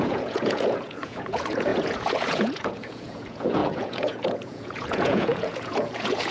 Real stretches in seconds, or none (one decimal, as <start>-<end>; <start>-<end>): none